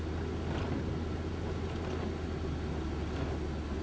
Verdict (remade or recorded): recorded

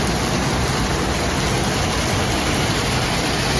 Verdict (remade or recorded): recorded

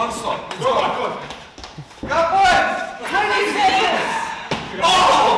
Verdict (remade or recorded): remade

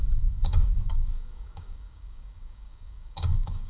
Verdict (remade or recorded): remade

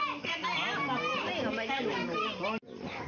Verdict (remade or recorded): recorded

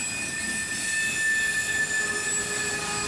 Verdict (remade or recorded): recorded